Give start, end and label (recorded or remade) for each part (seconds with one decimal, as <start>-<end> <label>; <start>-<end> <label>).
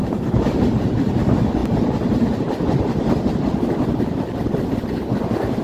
0.0-0.5 remade; 0.5-5.6 recorded